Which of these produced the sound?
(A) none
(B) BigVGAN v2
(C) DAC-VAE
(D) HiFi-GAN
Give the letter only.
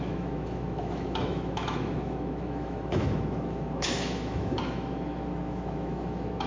C